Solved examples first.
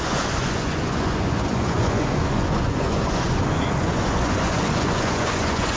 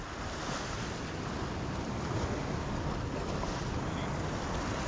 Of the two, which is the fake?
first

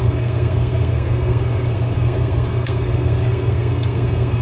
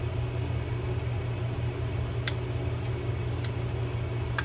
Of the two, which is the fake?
first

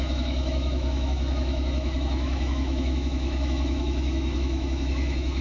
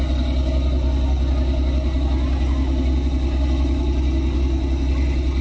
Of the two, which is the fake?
first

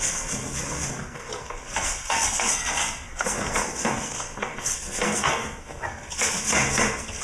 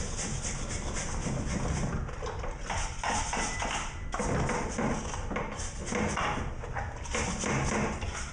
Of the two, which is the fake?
first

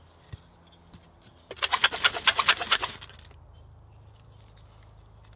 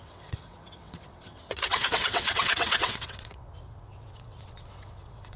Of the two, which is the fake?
second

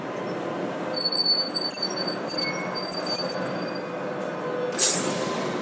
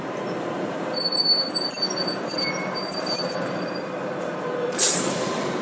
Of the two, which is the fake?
second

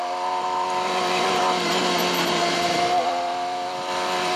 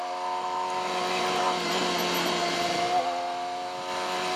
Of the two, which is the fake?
first